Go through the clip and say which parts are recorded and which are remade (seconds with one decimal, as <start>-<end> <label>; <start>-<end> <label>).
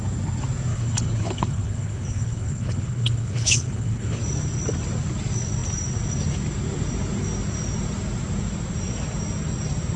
0.0-0.7 recorded; 0.7-4.2 remade; 4.2-10.0 recorded